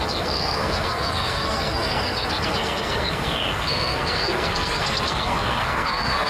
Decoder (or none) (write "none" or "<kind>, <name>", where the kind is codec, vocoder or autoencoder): codec, SNAC